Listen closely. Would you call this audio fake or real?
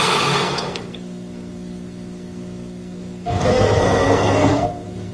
fake